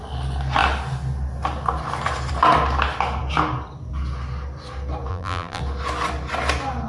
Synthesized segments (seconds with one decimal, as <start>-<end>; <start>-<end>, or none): 5.1-5.6